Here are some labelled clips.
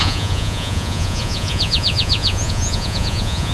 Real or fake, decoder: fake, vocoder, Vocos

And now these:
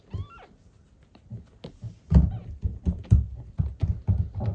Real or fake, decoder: real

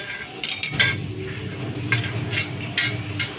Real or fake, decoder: real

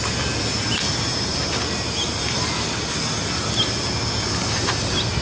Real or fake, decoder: real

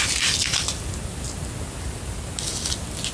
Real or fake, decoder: real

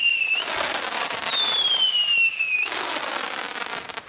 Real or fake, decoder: real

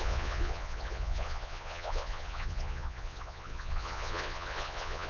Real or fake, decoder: fake, vocoder, Vocos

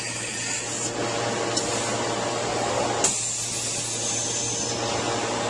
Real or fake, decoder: real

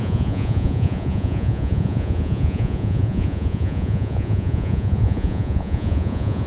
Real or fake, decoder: fake, vocoder, Vocos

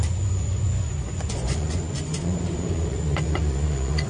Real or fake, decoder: fake, vocoder, Vocos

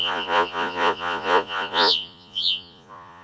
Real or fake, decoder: fake, vocoder, Vocos